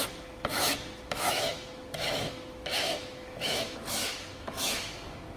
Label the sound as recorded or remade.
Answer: remade